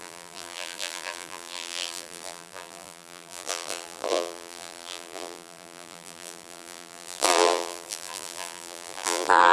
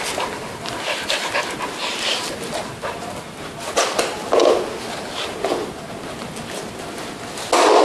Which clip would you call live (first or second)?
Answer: second